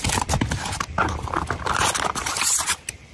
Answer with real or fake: real